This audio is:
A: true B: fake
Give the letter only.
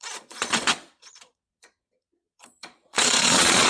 B